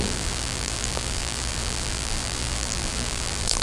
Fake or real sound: fake